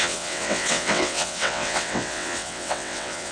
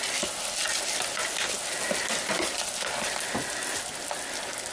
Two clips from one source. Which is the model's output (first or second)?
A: first